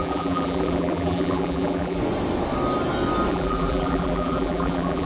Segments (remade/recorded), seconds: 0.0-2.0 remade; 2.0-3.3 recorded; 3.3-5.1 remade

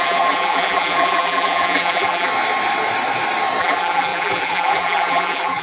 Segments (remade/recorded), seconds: 0.0-2.3 remade; 2.3-3.6 recorded; 3.6-5.6 remade

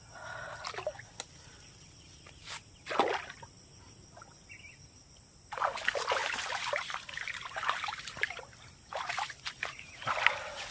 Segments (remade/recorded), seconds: 0.0-6.2 recorded; 6.2-8.4 remade; 8.4-10.7 recorded

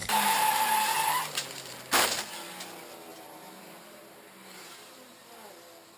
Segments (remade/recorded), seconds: 0.0-1.7 remade; 1.7-3.1 recorded; 3.1-5.3 remade; 5.3-6.0 recorded

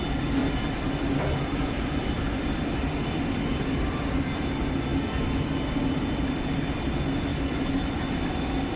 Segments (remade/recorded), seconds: 0.0-0.4 recorded; 0.4-4.3 remade; 4.3-8.8 recorded

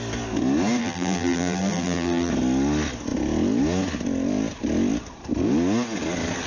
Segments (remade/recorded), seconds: 0.0-0.8 recorded; 0.8-2.3 remade; 2.3-6.5 recorded